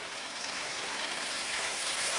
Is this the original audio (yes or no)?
no